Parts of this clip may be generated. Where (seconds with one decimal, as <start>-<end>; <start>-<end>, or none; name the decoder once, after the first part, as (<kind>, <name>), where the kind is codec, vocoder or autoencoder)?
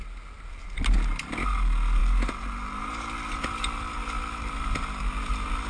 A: none